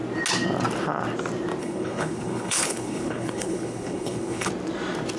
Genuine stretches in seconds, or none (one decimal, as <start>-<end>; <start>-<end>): 0.0-1.6; 4.5-5.2